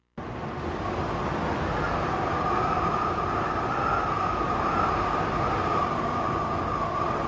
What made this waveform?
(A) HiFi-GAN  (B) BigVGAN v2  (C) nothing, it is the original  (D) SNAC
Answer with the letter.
C